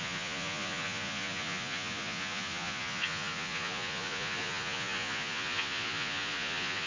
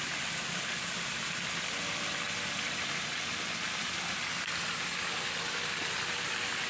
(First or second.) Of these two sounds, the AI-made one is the first